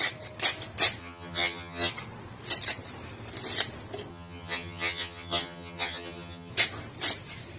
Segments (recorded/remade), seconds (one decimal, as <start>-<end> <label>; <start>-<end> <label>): 0.0-1.0 recorded; 1.0-1.9 remade; 1.9-4.1 recorded; 4.1-6.5 remade; 6.5-7.6 recorded